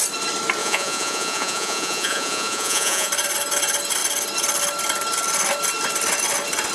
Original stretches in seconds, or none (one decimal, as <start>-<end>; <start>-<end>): 0.0-0.6; 3.1-6.7